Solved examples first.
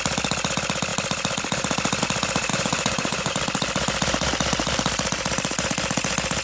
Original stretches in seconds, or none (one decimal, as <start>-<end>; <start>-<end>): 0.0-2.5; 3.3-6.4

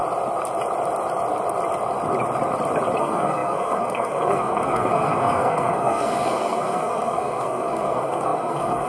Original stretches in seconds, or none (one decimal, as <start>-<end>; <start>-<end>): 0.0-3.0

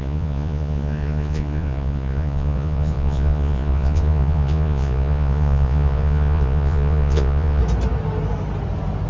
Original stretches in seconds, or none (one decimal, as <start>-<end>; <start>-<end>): 7.6-9.1

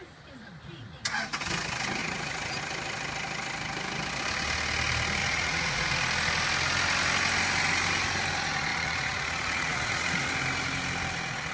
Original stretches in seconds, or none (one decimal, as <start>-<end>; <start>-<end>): 0.0-2.0; 2.6-5.2; 5.9-8.7; 10.3-11.5

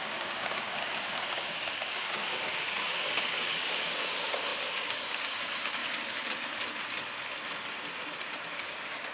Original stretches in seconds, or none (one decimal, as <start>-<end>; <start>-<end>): 5.8-8.7

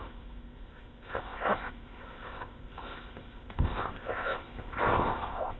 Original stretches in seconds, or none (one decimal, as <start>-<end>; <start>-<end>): none